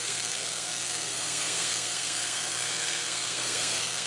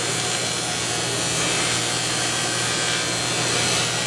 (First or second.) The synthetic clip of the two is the first